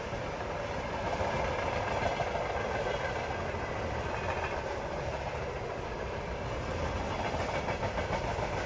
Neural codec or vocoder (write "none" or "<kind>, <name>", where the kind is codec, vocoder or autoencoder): none